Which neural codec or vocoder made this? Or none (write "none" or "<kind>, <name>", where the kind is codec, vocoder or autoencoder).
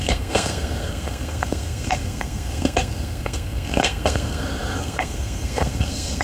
codec, SNAC